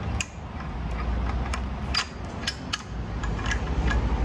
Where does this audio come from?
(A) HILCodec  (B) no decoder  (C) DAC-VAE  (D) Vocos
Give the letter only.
B